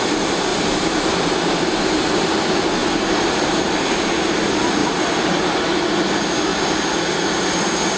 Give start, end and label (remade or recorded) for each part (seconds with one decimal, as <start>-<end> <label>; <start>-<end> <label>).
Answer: 0.0-0.5 recorded; 0.5-2.3 remade; 2.3-2.8 recorded; 2.8-3.7 remade; 3.7-4.8 recorded; 4.8-5.7 remade; 5.7-8.0 recorded